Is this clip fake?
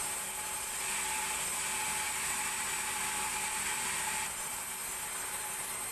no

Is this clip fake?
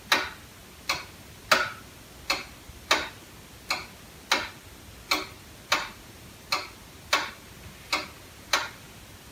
no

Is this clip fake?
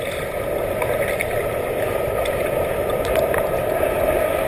no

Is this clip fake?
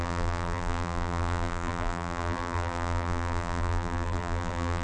yes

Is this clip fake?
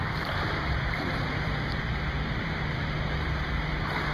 yes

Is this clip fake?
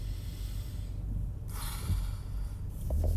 no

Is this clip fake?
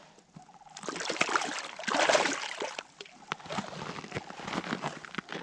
no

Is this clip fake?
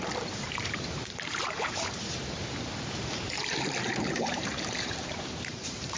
yes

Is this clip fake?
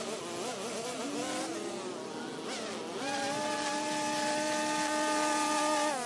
no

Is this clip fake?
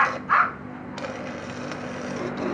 no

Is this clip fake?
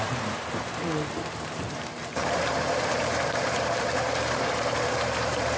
yes